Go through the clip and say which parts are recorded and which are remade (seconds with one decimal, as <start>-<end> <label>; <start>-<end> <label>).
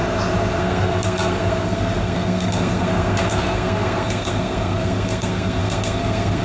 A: 0.0-0.6 recorded; 0.6-6.4 remade